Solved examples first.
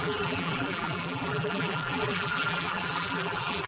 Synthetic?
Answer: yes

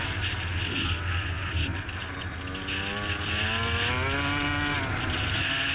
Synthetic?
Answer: no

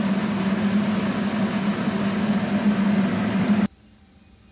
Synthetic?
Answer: no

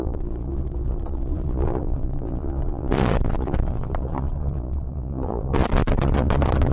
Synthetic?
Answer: yes